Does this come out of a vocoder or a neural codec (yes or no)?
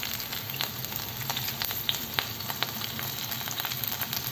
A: yes